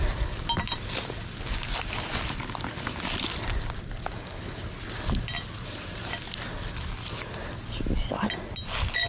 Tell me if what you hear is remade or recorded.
recorded